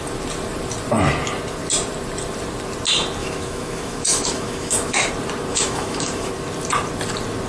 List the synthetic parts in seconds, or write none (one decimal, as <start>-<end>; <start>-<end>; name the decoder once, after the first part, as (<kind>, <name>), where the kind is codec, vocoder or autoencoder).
3.2-5.1 (autoencoder, DAC-VAE); 5.5-6.3